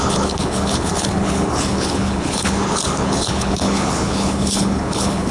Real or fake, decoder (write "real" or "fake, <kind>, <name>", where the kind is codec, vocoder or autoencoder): fake, codec, HILCodec